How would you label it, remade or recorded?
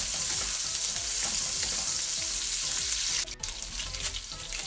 recorded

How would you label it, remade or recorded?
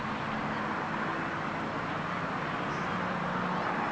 recorded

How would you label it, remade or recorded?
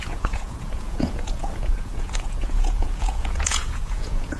remade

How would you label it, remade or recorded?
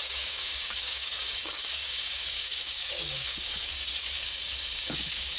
remade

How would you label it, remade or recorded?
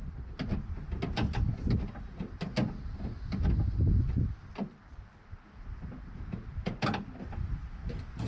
recorded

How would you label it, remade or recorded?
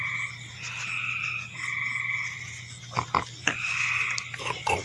recorded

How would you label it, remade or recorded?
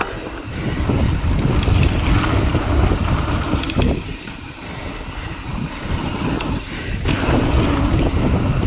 remade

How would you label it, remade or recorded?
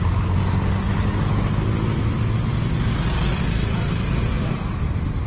recorded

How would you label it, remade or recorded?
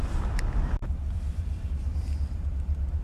remade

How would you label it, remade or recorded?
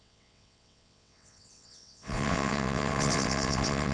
remade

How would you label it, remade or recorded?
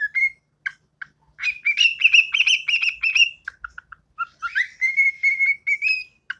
recorded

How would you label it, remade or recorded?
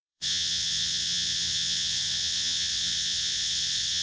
remade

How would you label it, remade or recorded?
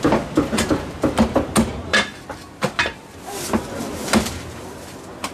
recorded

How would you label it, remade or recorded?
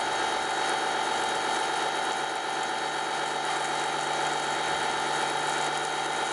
recorded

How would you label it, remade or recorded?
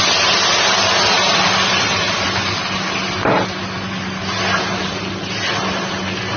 recorded